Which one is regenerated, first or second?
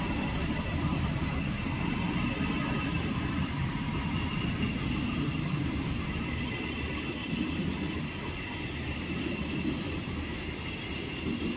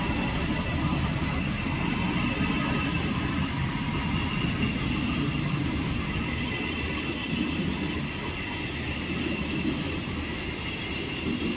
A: first